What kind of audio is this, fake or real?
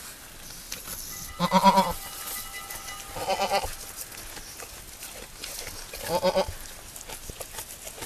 real